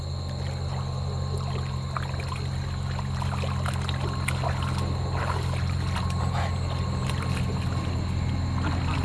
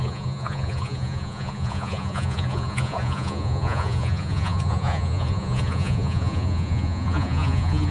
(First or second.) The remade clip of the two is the second